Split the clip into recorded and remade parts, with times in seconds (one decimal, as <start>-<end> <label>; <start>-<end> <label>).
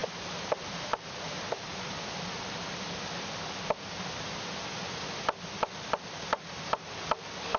0.0-7.6 recorded